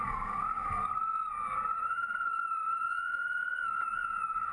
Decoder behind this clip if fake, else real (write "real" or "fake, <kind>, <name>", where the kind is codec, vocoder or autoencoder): real